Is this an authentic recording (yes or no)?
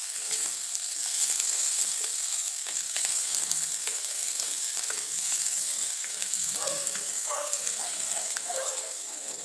no